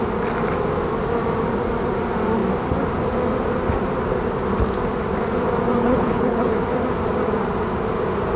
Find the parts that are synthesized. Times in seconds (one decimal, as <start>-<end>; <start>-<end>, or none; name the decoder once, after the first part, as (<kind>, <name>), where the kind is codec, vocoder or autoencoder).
5.8-6.6 (codec, HILCodec)

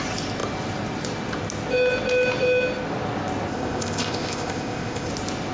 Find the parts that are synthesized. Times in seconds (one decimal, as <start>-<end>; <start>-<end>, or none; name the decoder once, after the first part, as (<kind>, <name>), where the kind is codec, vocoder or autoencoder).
3.5-5.1 (codec, ZipCodec)

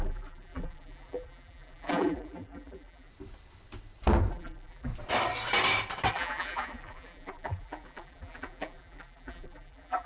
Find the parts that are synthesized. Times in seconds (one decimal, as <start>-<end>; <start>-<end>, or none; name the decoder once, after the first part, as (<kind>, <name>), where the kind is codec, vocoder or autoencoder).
0.0-3.1 (vocoder, BigVGAN v2); 4.3-4.9; 6.1-10.1

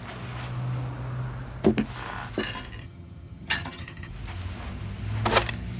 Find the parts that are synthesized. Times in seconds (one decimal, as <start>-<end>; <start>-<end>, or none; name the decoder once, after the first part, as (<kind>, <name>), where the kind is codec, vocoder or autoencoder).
2.8-4.1 (vocoder, HiFi-GAN)

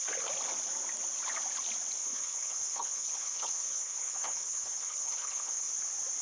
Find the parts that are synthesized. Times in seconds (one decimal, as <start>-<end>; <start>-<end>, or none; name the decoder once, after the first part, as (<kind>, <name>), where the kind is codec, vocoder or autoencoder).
2.0-5.7 (codec, HILCodec)

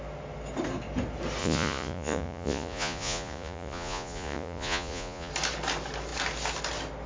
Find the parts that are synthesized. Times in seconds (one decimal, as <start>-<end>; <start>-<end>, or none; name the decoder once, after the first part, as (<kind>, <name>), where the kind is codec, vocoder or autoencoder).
1.4-5.3 (vocoder, Vocos)

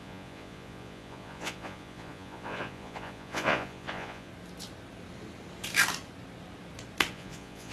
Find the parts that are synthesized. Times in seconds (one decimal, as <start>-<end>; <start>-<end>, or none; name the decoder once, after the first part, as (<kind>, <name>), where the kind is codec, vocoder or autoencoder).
0.0-4.3 (vocoder, Vocos); 7.1-7.7